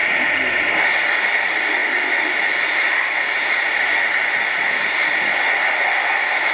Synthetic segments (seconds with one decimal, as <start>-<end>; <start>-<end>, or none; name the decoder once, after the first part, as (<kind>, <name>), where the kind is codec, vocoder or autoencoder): 0.0-1.8 (vocoder, BigVGAN v2); 5.7-6.5